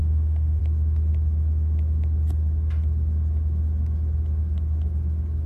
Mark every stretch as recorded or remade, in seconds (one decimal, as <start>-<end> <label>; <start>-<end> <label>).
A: 0.0-0.6 remade; 0.6-5.5 recorded